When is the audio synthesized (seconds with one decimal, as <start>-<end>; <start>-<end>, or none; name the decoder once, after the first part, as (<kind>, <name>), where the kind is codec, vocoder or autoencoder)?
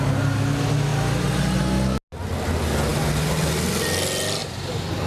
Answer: none